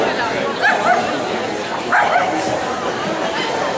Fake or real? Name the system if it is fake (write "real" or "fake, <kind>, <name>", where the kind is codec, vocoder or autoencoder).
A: real